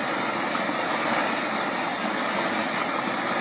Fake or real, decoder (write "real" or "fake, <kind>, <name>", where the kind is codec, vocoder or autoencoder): real